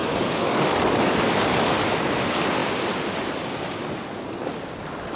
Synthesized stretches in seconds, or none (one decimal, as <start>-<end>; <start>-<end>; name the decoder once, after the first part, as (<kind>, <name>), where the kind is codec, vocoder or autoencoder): 0.0-1.8 (codec, DAC)